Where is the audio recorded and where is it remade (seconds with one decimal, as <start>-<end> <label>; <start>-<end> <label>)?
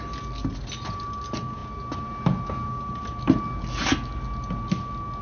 0.0-5.2 recorded